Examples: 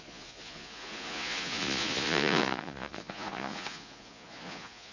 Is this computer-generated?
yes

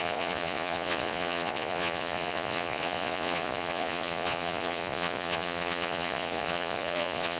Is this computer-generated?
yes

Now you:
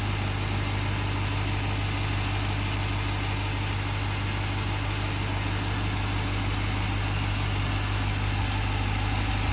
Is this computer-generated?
no